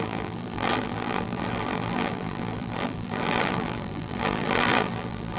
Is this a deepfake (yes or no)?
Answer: yes